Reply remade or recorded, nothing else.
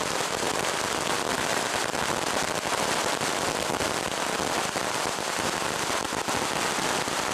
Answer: remade